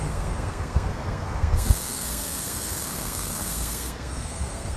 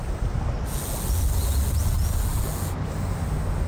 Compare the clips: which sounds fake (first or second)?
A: first